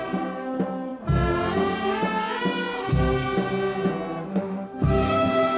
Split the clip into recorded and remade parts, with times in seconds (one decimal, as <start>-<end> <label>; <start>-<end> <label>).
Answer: 0.0-4.3 recorded; 4.3-5.6 remade